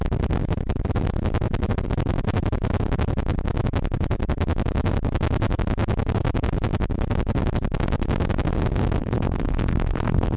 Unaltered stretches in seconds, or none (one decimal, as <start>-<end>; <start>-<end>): 0.0-9.0